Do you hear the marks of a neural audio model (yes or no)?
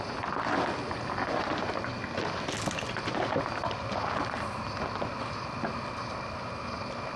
no